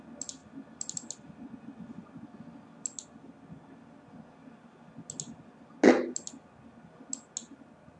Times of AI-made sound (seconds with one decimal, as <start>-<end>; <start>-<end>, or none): none

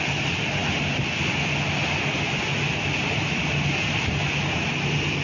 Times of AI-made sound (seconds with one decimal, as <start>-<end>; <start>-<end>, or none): none

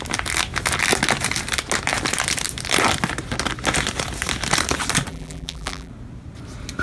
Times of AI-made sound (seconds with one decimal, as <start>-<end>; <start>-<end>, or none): 5.1-5.9